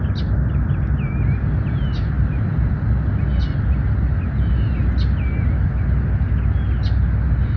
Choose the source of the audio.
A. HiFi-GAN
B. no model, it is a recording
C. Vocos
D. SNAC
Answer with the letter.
B